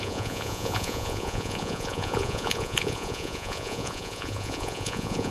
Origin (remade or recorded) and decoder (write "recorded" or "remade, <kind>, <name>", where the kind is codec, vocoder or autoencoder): remade, vocoder, Vocos